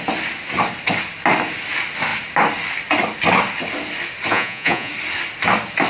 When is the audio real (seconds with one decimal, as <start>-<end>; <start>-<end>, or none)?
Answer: 0.0-4.3; 4.9-5.9